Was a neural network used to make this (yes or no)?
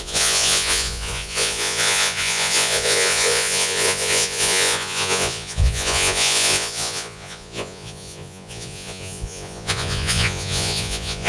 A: yes